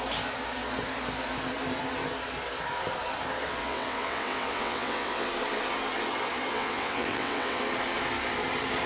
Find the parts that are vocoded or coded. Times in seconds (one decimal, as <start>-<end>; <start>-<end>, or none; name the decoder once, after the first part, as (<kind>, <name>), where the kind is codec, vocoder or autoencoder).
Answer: 3.6-5.3 (vocoder, WaveNeXt); 6.5-7.6